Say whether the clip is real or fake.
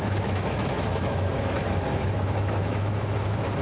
fake